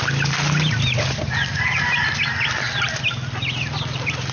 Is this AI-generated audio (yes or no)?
yes